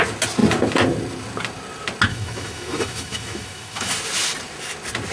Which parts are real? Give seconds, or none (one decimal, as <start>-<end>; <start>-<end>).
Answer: 0.0-2.1; 3.9-5.1